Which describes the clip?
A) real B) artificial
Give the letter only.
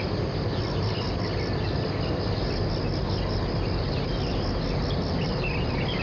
A